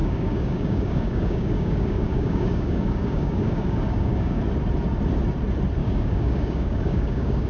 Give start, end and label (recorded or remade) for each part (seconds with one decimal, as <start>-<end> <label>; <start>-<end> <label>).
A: 0.0-4.4 remade; 4.4-5.8 recorded; 5.8-7.5 remade

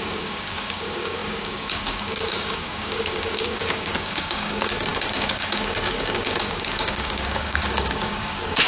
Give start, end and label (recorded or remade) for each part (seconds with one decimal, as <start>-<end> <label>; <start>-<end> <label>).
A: 0.0-8.7 remade

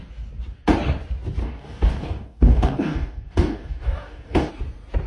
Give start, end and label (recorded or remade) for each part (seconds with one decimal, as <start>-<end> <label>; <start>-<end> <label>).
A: 0.0-1.4 recorded; 1.4-4.5 remade; 4.5-5.1 recorded

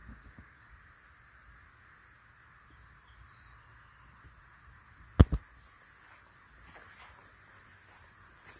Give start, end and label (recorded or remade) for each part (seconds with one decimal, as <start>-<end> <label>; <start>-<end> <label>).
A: 0.0-0.7 remade; 0.7-8.6 recorded

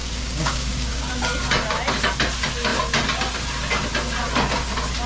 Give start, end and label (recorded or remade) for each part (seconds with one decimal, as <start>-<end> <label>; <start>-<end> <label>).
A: 0.0-1.1 remade; 1.1-5.1 recorded

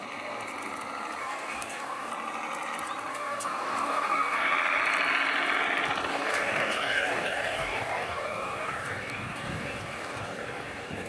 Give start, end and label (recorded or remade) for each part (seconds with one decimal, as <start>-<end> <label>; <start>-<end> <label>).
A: 0.0-1.2 recorded; 1.2-2.1 remade; 2.1-3.1 recorded; 3.1-4.5 remade; 4.5-6.1 recorded; 6.1-11.1 remade

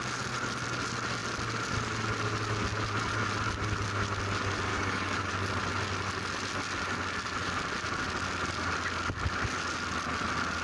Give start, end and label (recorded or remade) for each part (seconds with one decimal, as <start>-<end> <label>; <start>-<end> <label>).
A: 0.0-4.7 recorded; 4.7-5.3 remade; 5.3-10.6 recorded

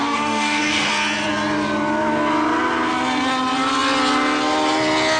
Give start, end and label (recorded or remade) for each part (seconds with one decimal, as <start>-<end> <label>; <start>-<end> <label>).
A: 0.0-0.9 remade; 0.9-5.2 recorded